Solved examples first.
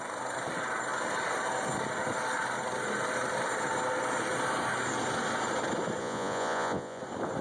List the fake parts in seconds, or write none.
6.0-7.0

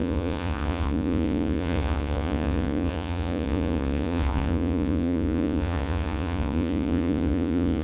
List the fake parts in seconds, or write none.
0.0-7.8

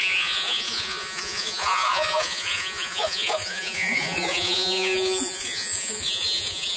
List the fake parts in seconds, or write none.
0.0-6.8

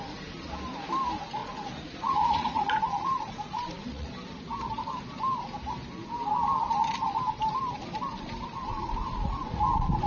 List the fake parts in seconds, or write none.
1.4-4.1; 8.7-9.6

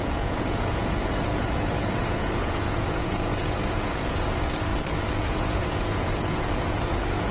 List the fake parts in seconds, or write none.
0.0-4.7; 5.2-7.3

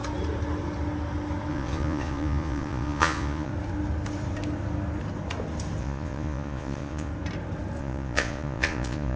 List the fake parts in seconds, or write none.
1.5-3.5; 5.8-7.1; 7.8-9.2

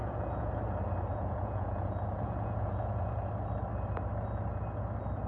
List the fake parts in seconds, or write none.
0.0-0.5; 1.1-3.3

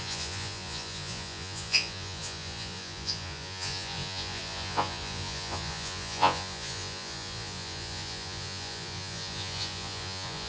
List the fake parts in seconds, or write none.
0.0-10.5